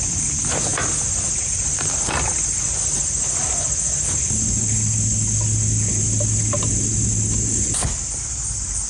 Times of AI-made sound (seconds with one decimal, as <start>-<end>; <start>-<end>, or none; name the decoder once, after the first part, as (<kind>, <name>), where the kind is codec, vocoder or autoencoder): none